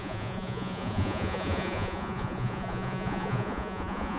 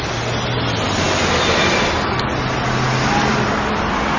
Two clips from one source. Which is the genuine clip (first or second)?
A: second